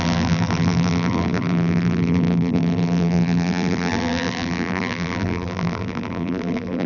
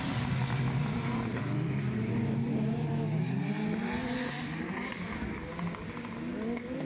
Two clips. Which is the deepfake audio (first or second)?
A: first